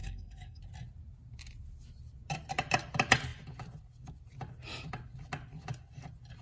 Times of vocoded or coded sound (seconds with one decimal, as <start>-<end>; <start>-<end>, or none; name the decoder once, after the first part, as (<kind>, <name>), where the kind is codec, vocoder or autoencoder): 0.0-0.6 (codec, SNAC)